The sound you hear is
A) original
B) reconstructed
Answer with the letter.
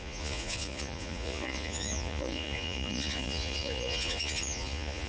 B